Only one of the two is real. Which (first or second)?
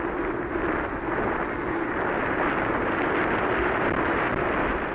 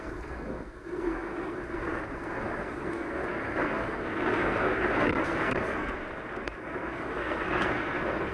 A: first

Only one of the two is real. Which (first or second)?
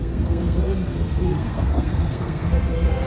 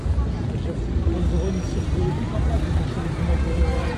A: second